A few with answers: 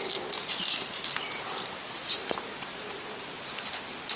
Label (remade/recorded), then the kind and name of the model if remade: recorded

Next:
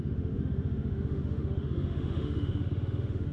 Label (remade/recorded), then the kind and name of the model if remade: remade, autoencoder, DAC-VAE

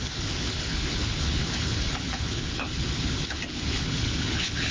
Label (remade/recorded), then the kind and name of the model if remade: remade, codec, HILCodec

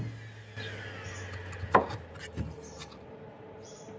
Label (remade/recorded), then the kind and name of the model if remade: recorded